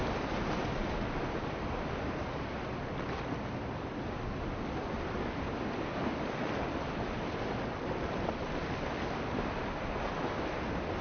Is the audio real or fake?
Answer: real